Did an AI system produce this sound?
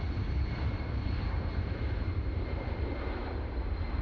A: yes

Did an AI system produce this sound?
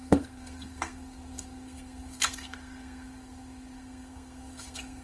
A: yes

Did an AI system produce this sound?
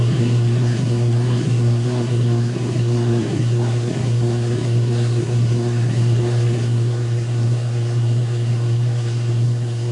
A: yes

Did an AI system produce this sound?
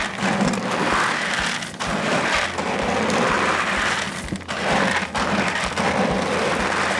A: no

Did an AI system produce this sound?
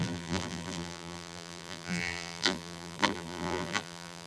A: yes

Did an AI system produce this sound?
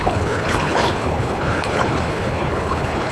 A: yes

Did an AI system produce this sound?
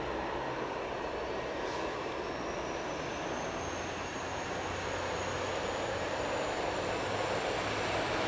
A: no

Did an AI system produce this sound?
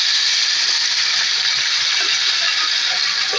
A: no